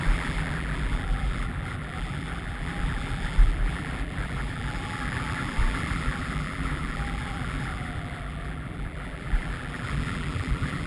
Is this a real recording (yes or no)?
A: no